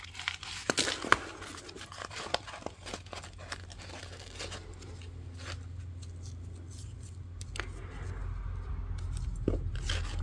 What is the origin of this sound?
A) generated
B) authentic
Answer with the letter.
B